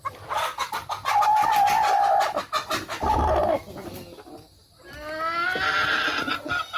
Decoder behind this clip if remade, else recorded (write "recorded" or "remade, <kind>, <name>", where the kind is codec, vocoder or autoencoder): recorded